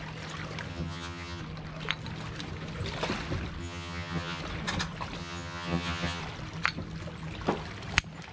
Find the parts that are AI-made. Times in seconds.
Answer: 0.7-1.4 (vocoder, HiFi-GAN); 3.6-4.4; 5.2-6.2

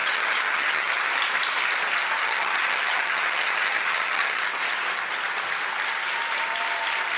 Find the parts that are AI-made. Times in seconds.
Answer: 0.0-0.9 (vocoder, HiFi-GAN); 2.2-4.4

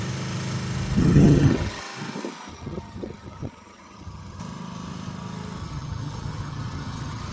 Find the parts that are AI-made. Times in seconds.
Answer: 1.0-1.8 (vocoder, HiFi-GAN); 2.5-4.4; 5.6-7.3

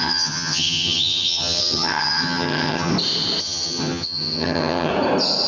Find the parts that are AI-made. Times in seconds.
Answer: 0.0-2.9 (vocoder, HiFi-GAN); 3.4-4.9

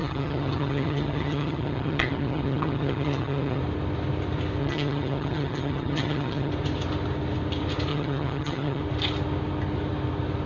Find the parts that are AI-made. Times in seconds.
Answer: 0.0-3.6 (vocoder, HiFi-GAN); 4.6-6.5; 7.9-8.8

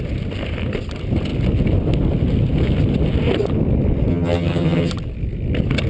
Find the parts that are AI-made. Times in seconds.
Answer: 4.1-4.9 (vocoder, HiFi-GAN)